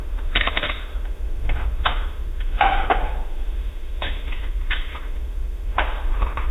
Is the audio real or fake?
fake